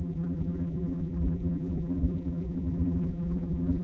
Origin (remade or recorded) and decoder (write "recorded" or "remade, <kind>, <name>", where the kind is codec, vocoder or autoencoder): remade, vocoder, BigVGAN v2